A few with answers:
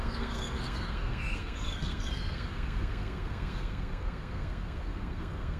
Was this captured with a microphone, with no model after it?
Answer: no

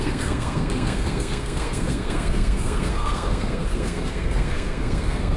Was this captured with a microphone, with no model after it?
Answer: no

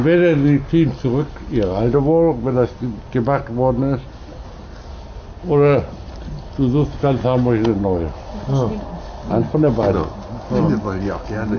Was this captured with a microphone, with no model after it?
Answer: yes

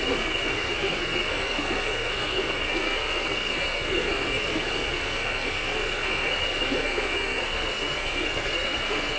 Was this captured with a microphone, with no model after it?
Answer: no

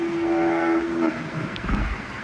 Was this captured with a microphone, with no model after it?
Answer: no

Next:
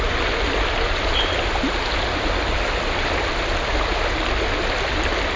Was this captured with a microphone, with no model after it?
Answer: yes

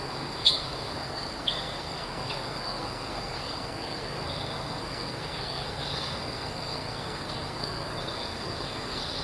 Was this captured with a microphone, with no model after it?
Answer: no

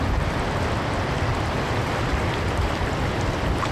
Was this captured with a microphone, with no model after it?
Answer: yes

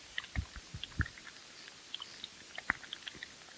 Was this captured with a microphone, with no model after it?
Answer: yes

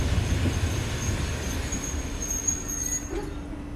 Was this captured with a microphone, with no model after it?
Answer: yes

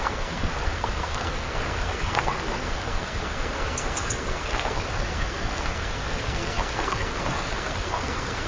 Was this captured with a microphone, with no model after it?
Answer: no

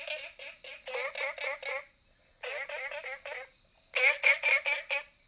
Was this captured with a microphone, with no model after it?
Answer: yes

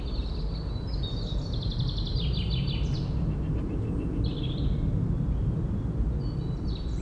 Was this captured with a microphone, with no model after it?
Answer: yes